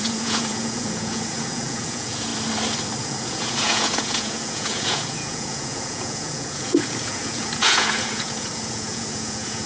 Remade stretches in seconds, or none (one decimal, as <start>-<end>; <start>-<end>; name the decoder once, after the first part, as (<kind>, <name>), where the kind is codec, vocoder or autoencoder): 0.0-2.3 (vocoder, Vocos); 3.0-9.7